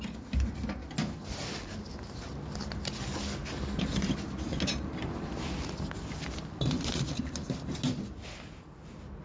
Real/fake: real